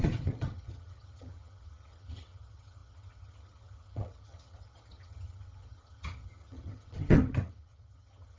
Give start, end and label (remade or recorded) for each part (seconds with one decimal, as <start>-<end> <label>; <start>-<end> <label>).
0.0-8.4 remade